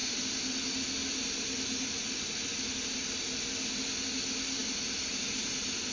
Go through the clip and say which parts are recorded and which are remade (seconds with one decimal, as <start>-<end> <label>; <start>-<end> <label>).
0.0-5.9 recorded